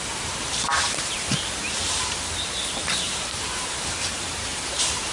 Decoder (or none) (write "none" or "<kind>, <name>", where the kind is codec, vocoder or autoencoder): vocoder, BigVGAN v2